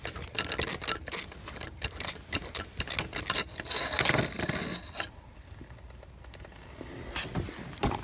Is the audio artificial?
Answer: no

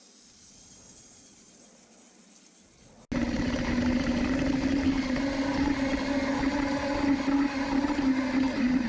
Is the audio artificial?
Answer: no